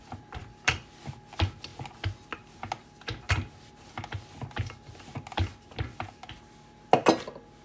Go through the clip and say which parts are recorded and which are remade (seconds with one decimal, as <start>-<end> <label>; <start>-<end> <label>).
0.0-7.6 recorded